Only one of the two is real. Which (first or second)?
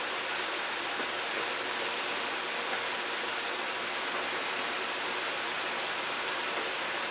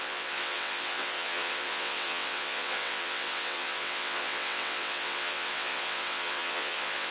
first